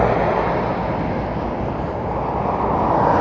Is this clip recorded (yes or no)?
yes